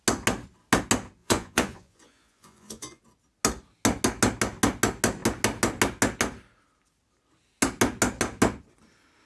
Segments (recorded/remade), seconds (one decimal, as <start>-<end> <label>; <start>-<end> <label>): 0.0-1.2 recorded; 1.2-3.0 remade; 3.0-9.2 recorded